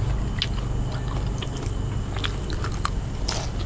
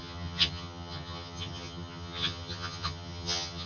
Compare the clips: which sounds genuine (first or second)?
first